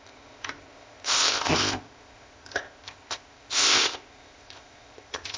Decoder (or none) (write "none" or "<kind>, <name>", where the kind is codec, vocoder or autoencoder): codec, ZipCodec